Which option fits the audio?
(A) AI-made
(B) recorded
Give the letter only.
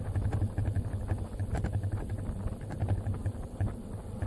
B